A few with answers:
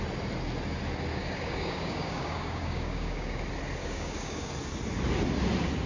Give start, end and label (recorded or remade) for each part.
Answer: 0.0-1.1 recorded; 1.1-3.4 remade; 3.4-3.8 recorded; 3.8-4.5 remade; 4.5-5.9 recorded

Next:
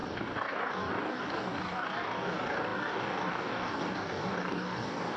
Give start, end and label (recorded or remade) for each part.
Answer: 0.0-5.2 remade